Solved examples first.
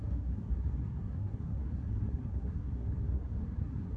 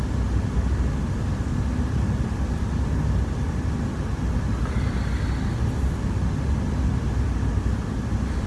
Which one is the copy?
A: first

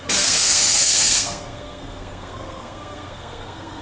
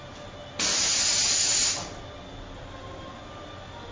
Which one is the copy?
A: first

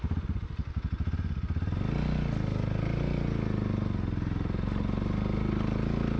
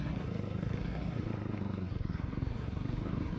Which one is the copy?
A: second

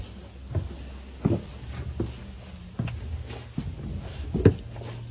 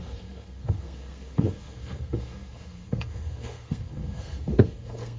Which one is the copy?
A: second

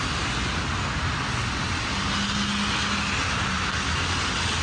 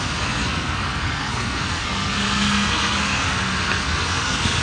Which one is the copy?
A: second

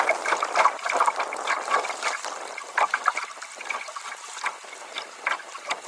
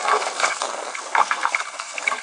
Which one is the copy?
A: second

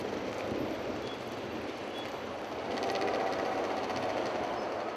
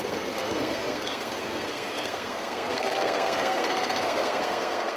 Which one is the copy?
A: second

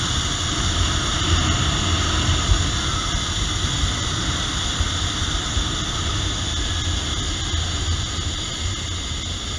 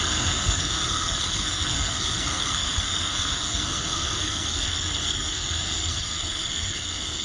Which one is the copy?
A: second